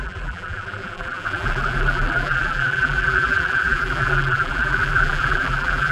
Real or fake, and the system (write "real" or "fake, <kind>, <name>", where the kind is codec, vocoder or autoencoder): fake, vocoder, BigVGAN v2